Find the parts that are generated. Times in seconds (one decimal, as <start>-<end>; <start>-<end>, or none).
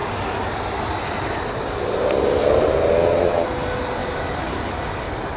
4.0-4.7